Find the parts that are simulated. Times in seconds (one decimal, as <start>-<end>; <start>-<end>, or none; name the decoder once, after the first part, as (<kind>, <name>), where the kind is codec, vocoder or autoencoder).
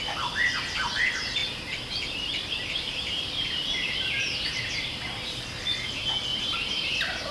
1.4-4.6 (vocoder, BigVGAN v2); 6.3-7.3